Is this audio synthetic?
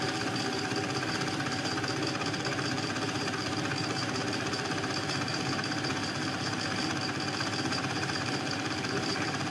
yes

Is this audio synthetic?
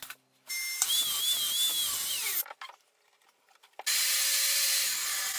no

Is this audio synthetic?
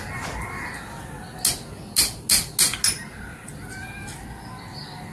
no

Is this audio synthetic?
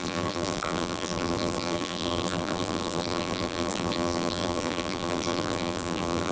yes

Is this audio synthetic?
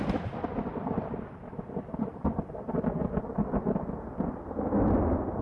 yes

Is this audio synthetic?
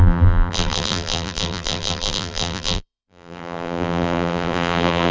yes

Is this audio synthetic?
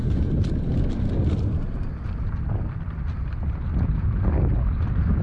no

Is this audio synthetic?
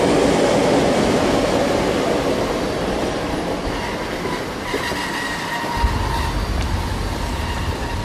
no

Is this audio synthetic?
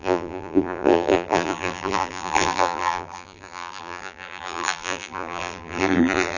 yes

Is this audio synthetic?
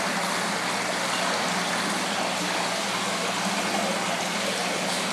no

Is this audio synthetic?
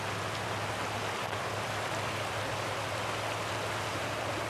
no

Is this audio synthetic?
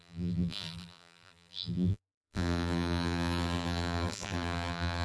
yes